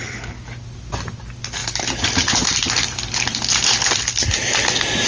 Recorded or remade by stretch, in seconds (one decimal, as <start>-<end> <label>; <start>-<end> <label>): 0.0-5.1 recorded